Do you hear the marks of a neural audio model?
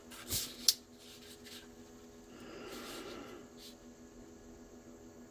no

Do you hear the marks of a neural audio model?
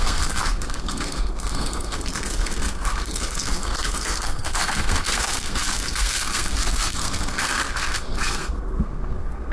yes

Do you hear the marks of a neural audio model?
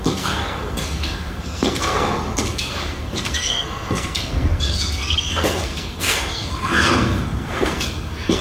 yes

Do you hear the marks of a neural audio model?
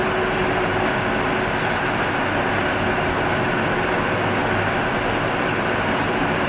no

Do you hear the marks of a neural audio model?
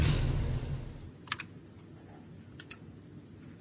no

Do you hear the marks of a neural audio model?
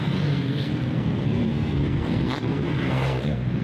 yes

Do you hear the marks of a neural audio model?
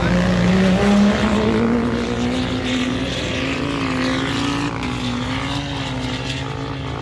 no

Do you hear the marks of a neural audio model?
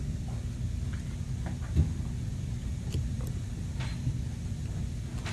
no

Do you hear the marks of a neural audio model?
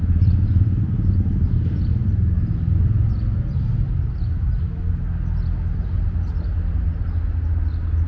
no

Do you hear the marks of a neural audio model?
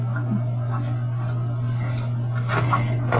no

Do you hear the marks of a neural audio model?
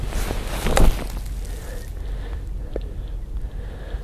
no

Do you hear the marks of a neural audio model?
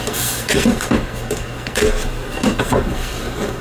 yes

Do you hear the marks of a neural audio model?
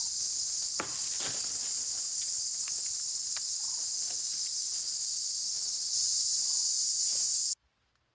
no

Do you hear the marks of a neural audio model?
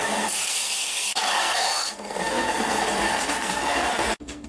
yes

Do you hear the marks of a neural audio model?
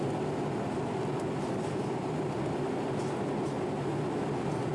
no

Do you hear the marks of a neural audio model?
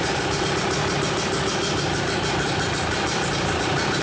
no